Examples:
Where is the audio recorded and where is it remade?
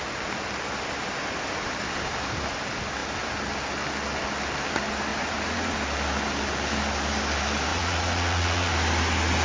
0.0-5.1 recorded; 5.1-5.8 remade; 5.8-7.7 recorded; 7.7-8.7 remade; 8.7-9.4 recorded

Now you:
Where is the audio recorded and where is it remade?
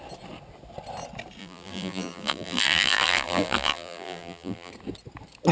0.0-1.4 recorded; 1.4-4.7 remade; 4.7-5.5 recorded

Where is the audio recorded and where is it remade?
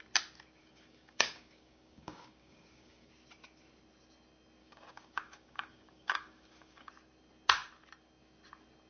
0.0-0.6 recorded; 0.6-3.1 remade; 3.1-4.6 recorded; 4.6-6.9 remade; 6.9-8.9 recorded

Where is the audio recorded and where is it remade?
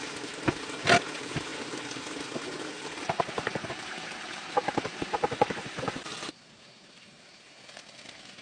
0.0-8.4 recorded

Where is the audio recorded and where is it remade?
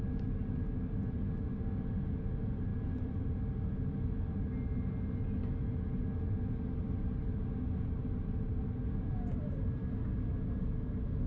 0.0-2.7 recorded; 2.7-3.3 remade; 3.3-11.3 recorded